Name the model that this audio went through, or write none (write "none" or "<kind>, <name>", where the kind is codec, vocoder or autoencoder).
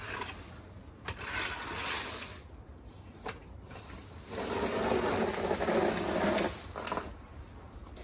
none